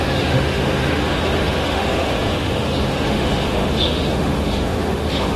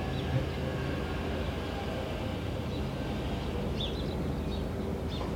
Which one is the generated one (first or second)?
first